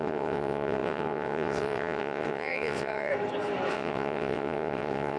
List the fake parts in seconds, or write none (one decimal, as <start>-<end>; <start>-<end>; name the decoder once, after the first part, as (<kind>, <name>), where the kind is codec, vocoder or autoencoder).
0.0-3.1 (vocoder, WaveNeXt); 3.7-5.2